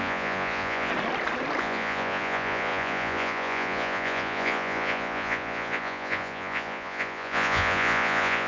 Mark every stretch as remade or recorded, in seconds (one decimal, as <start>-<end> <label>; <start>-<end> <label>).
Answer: 0.0-0.9 remade; 0.9-1.6 recorded; 1.6-8.5 remade